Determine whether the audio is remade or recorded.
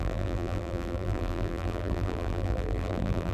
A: remade